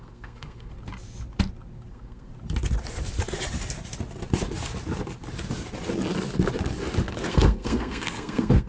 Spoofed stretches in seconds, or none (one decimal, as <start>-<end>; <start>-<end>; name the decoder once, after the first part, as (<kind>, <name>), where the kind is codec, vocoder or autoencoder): 0.0-0.7 (codec, SNAC); 1.9-2.3; 7.3-8.7

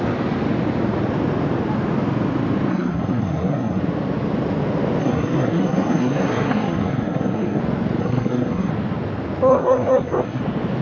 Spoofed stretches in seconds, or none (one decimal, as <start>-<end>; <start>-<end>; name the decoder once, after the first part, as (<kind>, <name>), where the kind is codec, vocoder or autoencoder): 2.7-3.8 (codec, SNAC); 5.0-7.6; 8.0-8.7; 9.5-10.4

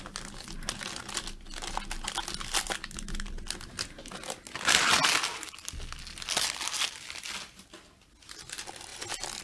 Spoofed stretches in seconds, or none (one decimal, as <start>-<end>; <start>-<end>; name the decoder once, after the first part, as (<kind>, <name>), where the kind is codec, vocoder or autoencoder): none

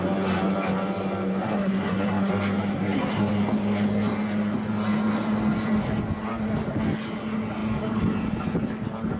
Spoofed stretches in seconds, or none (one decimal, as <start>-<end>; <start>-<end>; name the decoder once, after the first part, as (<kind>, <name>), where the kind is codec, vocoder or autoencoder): 1.4-2.3 (codec, SNAC); 2.7-3.3

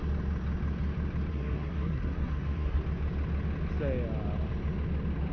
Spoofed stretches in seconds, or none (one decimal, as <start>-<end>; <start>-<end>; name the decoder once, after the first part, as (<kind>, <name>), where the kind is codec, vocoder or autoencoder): 1.3-2.8 (codec, SNAC)